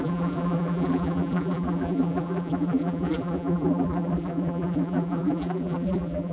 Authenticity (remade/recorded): remade